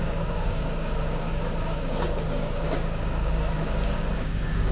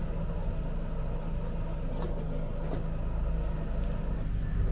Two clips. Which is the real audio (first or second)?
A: second